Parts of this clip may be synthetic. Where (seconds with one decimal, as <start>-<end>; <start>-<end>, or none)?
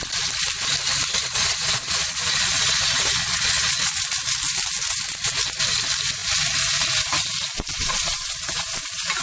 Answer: 1.2-4.0; 7.8-8.6